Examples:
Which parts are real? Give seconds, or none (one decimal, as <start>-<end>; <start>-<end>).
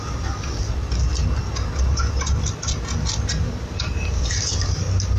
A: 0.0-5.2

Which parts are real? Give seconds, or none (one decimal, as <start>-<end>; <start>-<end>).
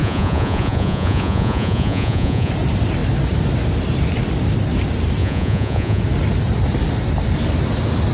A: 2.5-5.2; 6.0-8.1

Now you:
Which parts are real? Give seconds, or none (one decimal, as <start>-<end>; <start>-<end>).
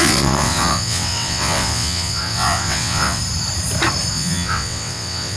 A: 3.2-4.1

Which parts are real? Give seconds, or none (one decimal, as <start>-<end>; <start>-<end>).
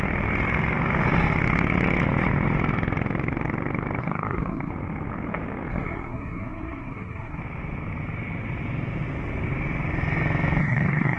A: 0.0-4.0; 4.7-5.7; 7.4-10.6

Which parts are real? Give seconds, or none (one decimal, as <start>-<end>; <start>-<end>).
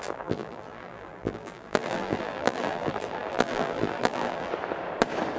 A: 4.5-5.4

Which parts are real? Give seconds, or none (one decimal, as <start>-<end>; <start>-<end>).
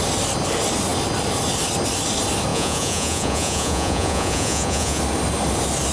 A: 0.0-2.5; 5.0-5.9